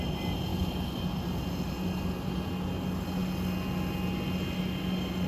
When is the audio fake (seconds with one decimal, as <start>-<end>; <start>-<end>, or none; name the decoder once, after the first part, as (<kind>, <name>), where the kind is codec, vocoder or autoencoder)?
none